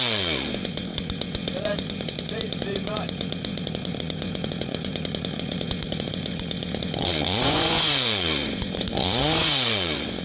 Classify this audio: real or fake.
fake